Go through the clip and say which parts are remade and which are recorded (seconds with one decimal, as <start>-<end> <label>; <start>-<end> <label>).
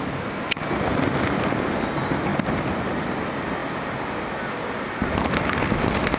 0.0-0.9 recorded; 0.9-1.6 remade; 1.6-2.3 recorded; 2.3-3.0 remade; 3.0-6.2 recorded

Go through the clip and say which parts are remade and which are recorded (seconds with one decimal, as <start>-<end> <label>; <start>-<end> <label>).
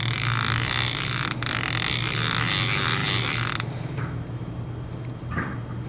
0.0-3.0 recorded; 3.0-4.4 remade; 4.4-5.9 recorded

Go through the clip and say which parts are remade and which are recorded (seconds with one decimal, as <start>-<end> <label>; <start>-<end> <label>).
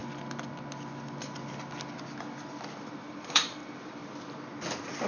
0.0-3.1 recorded; 3.1-4.0 remade; 4.0-5.1 recorded